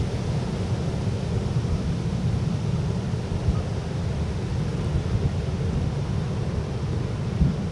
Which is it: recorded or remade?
recorded